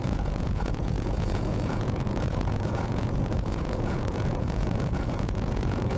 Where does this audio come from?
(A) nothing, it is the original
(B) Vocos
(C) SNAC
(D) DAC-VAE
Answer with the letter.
B